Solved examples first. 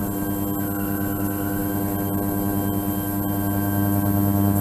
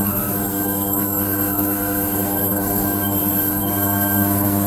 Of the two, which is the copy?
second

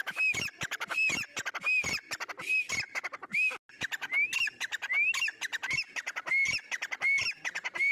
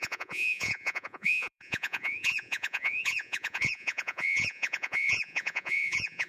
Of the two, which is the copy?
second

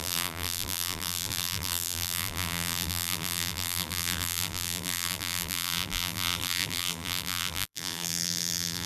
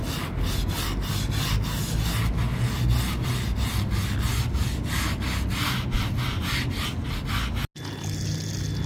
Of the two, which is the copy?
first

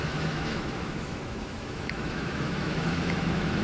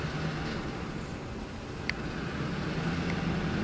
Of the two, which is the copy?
first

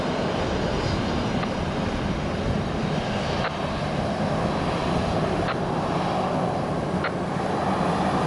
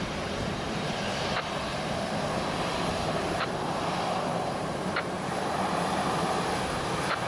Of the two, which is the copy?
second